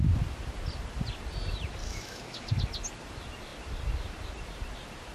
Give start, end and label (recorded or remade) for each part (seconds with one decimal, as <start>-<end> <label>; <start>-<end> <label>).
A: 0.0-1.8 recorded; 1.8-2.5 remade; 2.5-5.1 recorded